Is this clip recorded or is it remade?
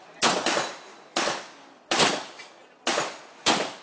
recorded